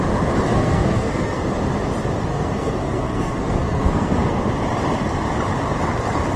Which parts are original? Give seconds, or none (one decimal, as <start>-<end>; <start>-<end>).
0.0-0.5; 1.4-2.3; 4.4-6.4